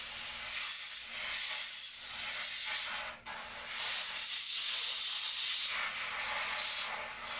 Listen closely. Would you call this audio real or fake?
real